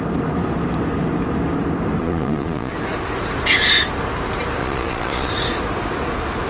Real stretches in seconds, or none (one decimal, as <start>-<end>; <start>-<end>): 0.0-2.0; 2.7-4.6; 5.3-6.5